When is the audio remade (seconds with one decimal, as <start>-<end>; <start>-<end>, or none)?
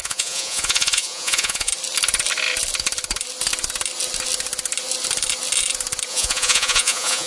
0.0-1.7; 6.1-7.3